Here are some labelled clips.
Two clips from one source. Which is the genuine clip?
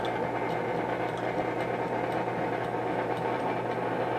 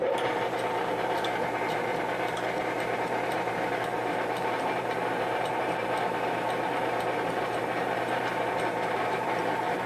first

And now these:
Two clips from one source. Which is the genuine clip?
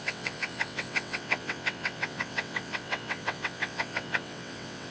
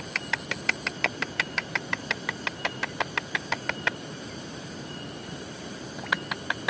second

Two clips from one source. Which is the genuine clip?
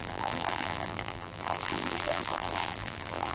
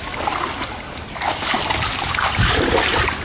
second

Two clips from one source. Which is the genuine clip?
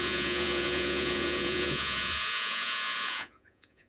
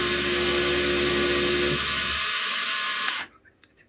second